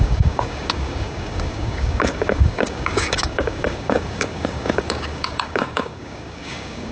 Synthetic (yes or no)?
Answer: yes